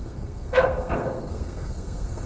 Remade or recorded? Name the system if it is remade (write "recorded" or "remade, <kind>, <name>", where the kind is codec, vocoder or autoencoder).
remade, codec, SNAC